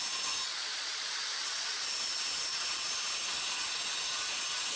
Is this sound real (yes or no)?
no